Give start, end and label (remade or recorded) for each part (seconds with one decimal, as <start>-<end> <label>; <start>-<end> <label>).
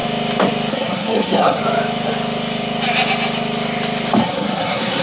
0.0-0.7 recorded; 0.7-1.6 remade; 1.6-4.2 recorded; 4.2-5.0 remade